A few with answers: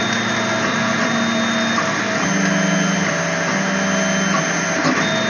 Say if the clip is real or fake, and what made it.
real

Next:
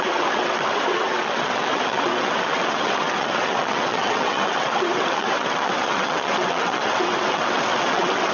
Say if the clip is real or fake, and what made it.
fake, vocoder, WaveNeXt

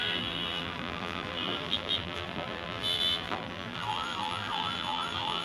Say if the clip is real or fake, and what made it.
fake, vocoder, BigVGAN v2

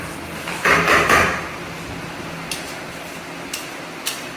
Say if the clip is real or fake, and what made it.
real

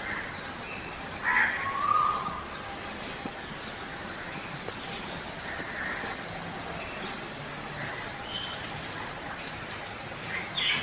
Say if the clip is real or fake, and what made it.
real